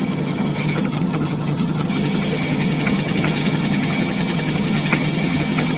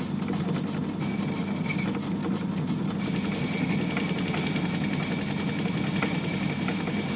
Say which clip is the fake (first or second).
first